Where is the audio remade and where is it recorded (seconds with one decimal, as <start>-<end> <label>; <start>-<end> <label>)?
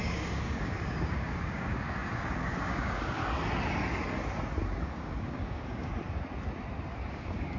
0.0-3.2 remade; 3.2-4.8 recorded; 4.8-5.9 remade; 5.9-7.1 recorded; 7.1-7.6 remade